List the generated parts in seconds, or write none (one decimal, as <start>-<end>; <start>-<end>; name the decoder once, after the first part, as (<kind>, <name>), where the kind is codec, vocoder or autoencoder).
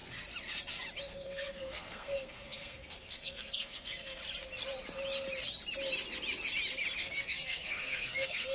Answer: 1.0-4.2 (codec, SNAC); 7.0-8.5